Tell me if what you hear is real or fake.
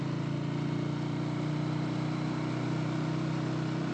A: real